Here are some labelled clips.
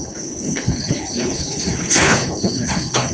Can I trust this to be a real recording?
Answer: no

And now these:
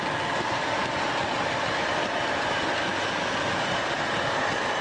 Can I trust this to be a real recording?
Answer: yes